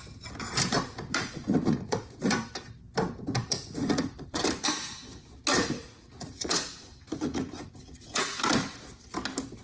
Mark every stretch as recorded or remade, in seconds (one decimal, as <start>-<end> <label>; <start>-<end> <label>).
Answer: 0.0-1.1 recorded; 1.1-2.2 remade; 2.2-3.4 recorded; 3.4-4.4 remade; 4.4-5.6 recorded; 5.6-8.3 remade; 8.3-9.6 recorded